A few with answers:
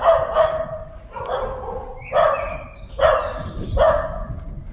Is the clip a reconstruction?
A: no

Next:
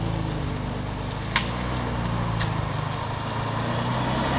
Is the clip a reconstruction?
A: no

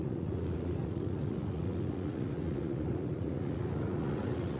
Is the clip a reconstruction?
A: yes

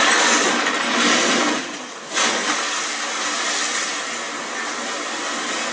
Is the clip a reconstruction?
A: no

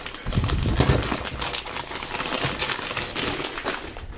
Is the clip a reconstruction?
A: no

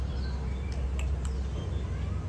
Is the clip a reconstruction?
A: no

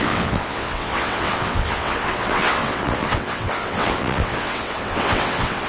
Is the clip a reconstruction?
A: yes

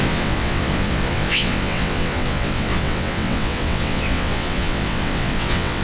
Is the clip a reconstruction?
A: yes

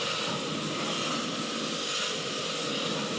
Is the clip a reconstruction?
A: no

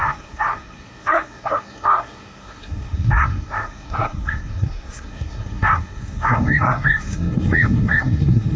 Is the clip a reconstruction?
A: yes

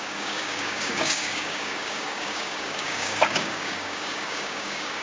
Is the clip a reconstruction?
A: yes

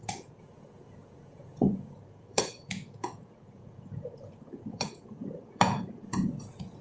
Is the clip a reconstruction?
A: yes